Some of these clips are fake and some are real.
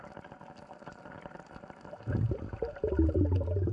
fake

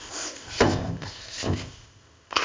fake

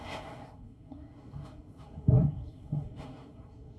fake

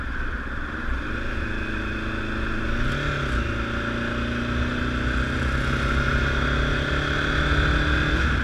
real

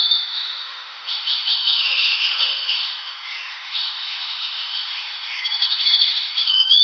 fake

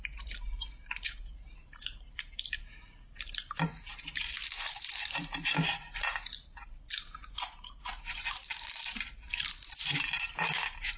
fake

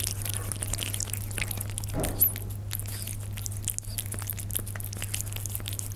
real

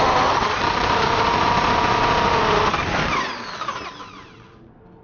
real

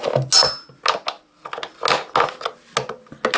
real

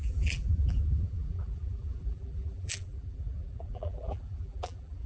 fake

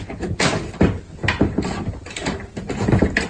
real